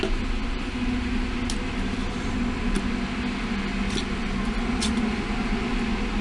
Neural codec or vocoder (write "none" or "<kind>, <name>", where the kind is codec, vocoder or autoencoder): none